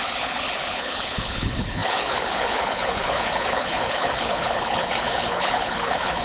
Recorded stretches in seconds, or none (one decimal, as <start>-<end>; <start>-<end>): none